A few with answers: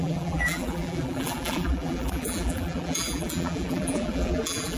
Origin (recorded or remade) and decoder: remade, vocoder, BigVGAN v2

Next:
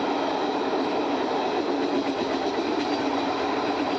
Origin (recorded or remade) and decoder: recorded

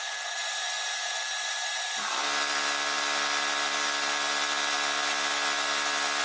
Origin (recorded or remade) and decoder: recorded